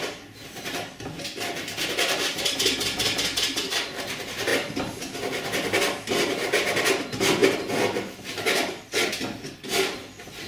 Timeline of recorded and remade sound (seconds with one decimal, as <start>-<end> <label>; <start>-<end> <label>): 0.0-10.5 recorded